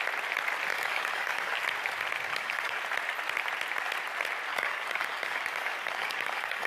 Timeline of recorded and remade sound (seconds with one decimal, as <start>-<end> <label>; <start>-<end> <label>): 0.0-0.7 recorded; 0.7-1.5 remade; 1.5-2.3 recorded; 2.3-2.8 remade; 2.8-4.5 recorded; 4.5-6.7 remade